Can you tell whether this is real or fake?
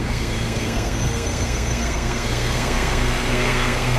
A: fake